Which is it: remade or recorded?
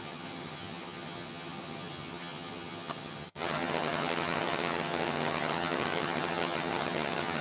remade